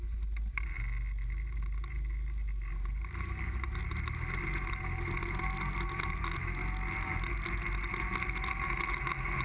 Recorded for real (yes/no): yes